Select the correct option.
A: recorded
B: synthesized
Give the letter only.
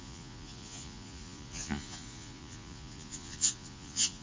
B